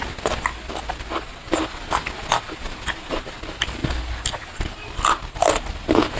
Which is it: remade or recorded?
recorded